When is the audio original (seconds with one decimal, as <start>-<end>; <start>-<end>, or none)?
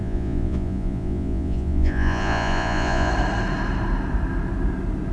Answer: 3.1-5.1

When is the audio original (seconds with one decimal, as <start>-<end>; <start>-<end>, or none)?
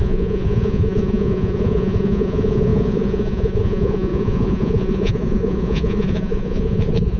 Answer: none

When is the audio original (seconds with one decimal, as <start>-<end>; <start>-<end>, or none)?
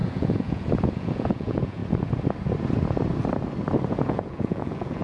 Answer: 1.8-3.9